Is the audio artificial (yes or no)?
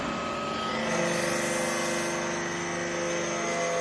no